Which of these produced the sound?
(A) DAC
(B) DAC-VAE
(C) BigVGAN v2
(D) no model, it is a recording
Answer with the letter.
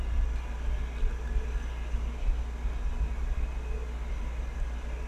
D